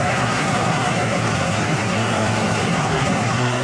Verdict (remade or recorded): remade